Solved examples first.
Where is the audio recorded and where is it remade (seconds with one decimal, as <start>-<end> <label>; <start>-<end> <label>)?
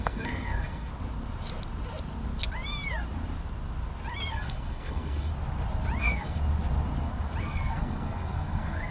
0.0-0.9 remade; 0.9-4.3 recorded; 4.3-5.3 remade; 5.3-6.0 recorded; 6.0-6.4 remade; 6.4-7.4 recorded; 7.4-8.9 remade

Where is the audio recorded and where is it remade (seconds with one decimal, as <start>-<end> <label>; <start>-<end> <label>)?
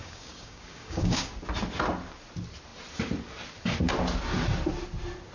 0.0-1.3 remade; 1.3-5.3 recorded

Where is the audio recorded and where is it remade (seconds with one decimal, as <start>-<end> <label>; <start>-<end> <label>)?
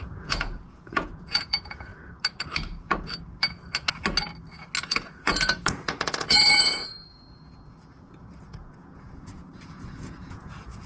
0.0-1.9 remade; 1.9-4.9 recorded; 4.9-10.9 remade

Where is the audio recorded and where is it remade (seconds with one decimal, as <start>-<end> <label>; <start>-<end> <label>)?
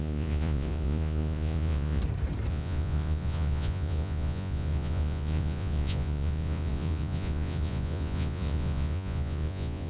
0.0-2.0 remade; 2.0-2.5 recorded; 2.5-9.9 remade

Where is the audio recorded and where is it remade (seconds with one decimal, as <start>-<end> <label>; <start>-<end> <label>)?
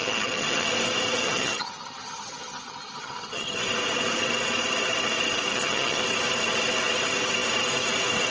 0.0-0.7 remade; 0.7-1.2 recorded; 1.2-3.6 remade; 3.6-5.5 recorded; 5.5-6.0 remade; 6.0-8.3 recorded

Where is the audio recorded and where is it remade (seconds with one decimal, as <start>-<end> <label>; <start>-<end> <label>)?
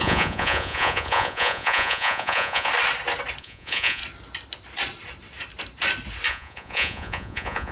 0.0-2.7 remade; 2.7-3.4 recorded; 3.4-4.0 remade; 4.0-6.3 recorded; 6.3-7.7 remade